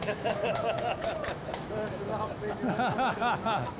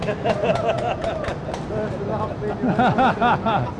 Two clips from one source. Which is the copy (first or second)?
first